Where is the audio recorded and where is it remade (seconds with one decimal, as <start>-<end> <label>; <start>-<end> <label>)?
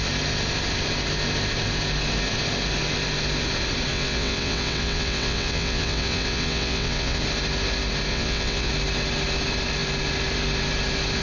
0.0-3.9 recorded; 3.9-7.2 remade; 7.2-8.1 recorded; 8.1-8.7 remade; 8.7-11.2 recorded